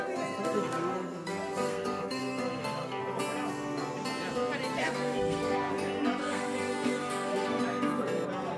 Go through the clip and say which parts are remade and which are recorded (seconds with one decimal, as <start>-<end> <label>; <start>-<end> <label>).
0.0-0.4 recorded; 0.4-3.0 remade; 3.0-4.7 recorded; 4.7-5.7 remade; 5.7-6.2 recorded; 6.2-7.6 remade; 7.6-8.6 recorded